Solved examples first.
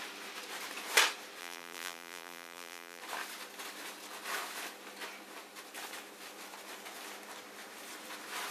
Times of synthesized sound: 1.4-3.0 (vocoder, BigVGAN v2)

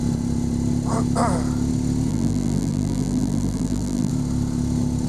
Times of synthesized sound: 2.1-4.1 (vocoder, BigVGAN v2)

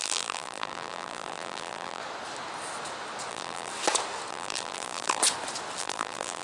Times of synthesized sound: 0.0-2.0 (vocoder, BigVGAN v2); 3.3-3.7; 4.3-5.2; 5.8-6.4

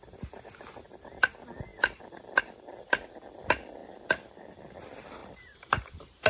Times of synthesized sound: 5.2-6.3 (vocoder, BigVGAN v2)

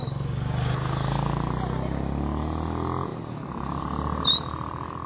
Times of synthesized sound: 3.1-3.8 (vocoder, BigVGAN v2)

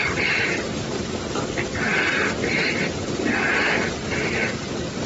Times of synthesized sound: 0.0-5.1 (vocoder, BigVGAN v2)

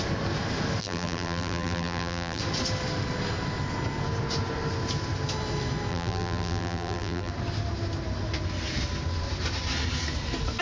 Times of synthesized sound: 0.8-2.4 (vocoder, BigVGAN v2); 5.9-7.3